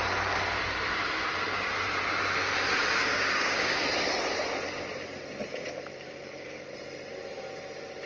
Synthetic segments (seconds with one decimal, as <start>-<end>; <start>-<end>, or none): 3.0-3.8